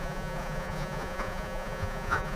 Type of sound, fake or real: fake